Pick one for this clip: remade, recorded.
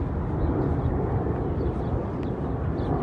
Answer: recorded